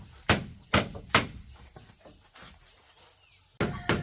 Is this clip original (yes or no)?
yes